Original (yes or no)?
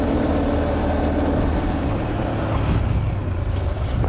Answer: yes